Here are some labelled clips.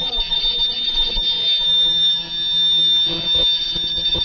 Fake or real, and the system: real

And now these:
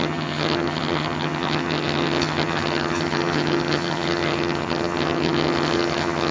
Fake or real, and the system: fake, vocoder, HiFi-GAN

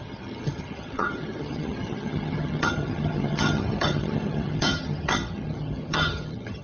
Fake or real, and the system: fake, vocoder, HiFi-GAN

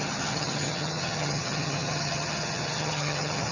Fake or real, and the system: fake, vocoder, HiFi-GAN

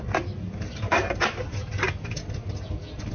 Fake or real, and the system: real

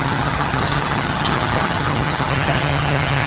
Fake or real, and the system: fake, vocoder, HiFi-GAN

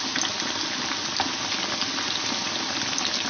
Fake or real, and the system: real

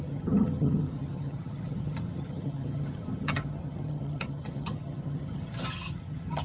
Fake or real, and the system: fake, vocoder, HiFi-GAN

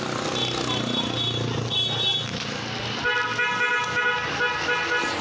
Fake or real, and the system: real